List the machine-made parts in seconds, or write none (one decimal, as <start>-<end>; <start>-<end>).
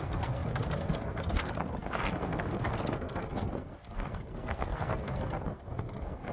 0.0-6.3